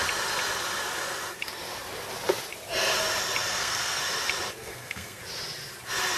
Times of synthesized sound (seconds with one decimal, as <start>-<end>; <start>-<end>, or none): 3.5-4.0; 4.6-5.2